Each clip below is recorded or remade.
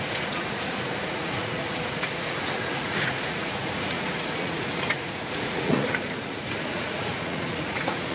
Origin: remade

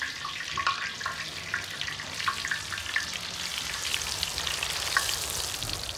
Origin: recorded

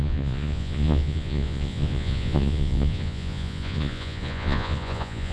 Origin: remade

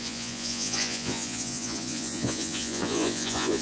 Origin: remade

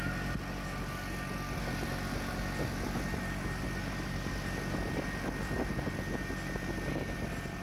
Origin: recorded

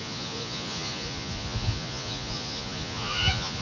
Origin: remade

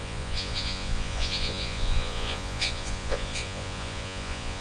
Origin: remade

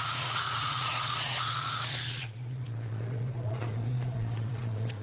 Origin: remade